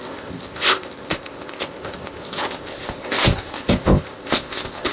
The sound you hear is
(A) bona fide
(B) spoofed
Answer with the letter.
B